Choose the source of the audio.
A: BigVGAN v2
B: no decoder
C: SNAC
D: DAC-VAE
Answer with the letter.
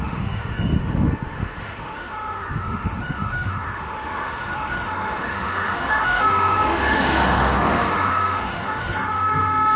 D